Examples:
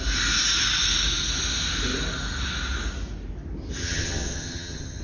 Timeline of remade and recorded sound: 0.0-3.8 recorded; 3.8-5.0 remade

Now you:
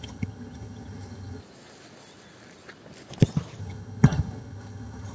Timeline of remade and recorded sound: 0.0-1.4 remade; 1.4-3.6 recorded; 3.6-5.1 remade

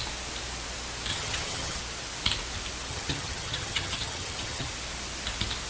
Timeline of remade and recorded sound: 0.0-1.1 recorded; 1.1-1.8 remade; 1.8-2.9 recorded; 2.9-4.7 remade; 4.7-5.7 recorded

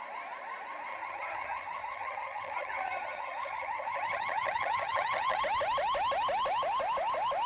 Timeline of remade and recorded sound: 0.0-0.9 recorded; 0.9-5.4 remade; 5.4-7.5 recorded

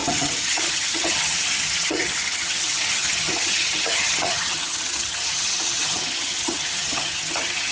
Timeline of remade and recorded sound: 0.0-7.7 remade

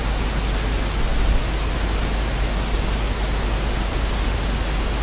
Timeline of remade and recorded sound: 0.0-5.0 recorded

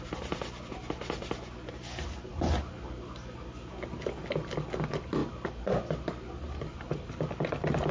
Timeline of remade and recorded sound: 0.0-7.9 recorded